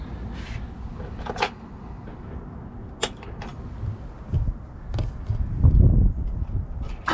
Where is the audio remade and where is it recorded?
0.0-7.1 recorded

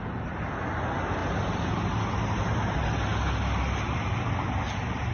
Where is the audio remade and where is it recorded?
0.0-5.1 recorded

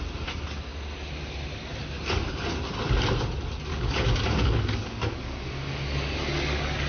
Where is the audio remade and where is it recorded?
0.0-3.7 recorded; 3.7-6.9 remade

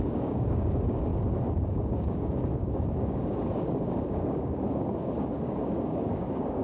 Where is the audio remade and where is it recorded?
0.0-1.1 remade; 1.1-2.0 recorded; 2.0-6.6 remade

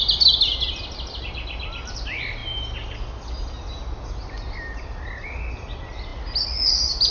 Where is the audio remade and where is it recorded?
0.0-7.1 recorded

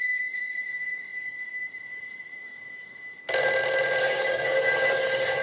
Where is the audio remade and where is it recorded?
0.0-3.2 remade; 3.2-4.0 recorded; 4.0-5.4 remade

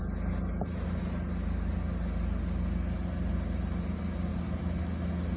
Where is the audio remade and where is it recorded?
0.0-5.4 recorded

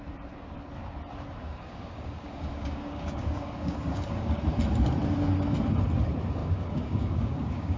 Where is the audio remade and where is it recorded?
0.0-1.4 recorded; 1.4-4.4 remade; 4.4-6.4 recorded; 6.4-7.8 remade